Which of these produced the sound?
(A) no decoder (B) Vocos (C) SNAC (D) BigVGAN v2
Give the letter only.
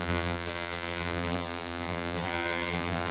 D